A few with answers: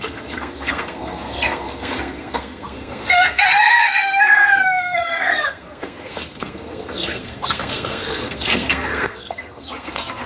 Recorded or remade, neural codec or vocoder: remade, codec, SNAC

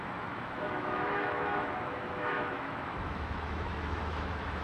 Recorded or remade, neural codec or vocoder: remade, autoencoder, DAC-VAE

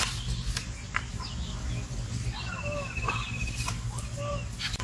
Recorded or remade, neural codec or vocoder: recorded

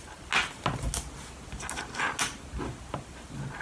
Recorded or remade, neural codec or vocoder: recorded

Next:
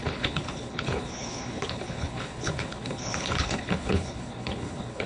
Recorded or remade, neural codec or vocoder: remade, codec, HILCodec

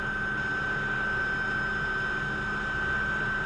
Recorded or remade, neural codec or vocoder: recorded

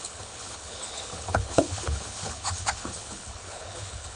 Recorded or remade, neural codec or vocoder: remade, codec, HILCodec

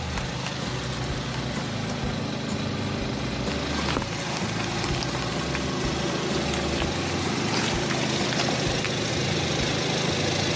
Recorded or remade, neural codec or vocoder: recorded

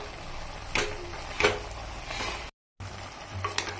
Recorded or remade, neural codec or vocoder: recorded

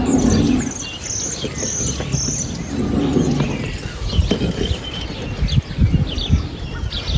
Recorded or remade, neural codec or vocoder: recorded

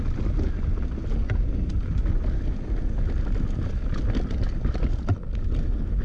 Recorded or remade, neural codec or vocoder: recorded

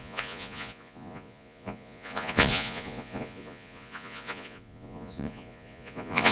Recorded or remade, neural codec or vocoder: remade, vocoder, Vocos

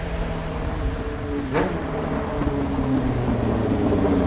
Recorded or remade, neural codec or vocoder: recorded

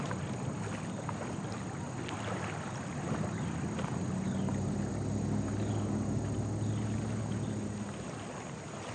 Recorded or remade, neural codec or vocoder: recorded